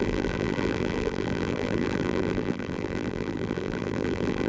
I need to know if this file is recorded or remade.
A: remade